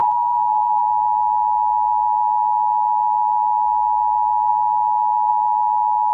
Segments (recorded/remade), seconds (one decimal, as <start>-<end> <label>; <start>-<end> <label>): 0.0-0.8 remade; 0.8-6.1 recorded